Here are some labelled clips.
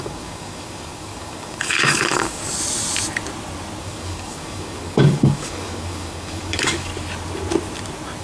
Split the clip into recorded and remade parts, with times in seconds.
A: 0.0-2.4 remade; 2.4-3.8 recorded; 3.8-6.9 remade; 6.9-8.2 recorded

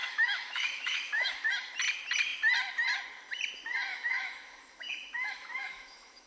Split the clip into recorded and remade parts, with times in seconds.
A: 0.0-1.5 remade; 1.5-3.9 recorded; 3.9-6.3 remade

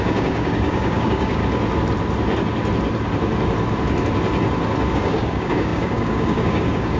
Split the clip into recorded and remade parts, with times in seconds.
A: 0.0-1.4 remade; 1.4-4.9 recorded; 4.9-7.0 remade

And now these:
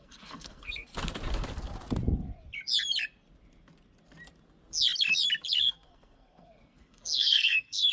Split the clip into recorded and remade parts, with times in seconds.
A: 0.0-0.9 remade; 0.9-5.6 recorded; 5.6-7.9 remade